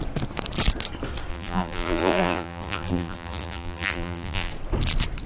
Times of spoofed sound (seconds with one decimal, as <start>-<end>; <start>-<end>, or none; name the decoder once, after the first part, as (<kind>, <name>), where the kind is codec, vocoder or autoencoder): 1.3-4.5 (vocoder, BigVGAN v2)